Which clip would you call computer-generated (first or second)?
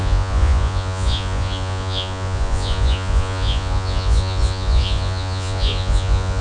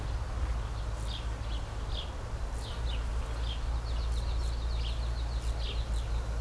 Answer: first